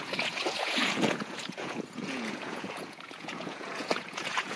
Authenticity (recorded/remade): remade